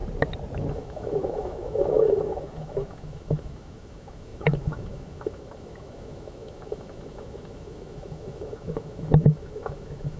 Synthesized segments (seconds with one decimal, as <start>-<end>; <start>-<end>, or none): 0.7-10.2